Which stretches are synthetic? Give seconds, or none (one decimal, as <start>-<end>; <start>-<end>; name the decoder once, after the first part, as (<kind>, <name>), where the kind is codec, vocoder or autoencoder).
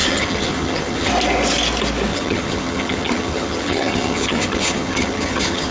0.0-1.1 (vocoder, HiFi-GAN); 2.1-5.7